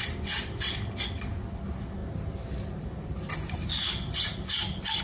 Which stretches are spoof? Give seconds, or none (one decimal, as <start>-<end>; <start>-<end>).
none